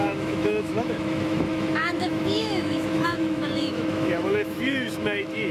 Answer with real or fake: fake